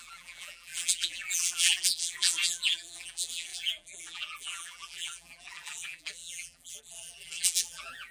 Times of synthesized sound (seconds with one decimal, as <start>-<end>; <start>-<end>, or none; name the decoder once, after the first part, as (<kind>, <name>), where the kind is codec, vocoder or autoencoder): 0.0-8.1 (vocoder, BigVGAN v2)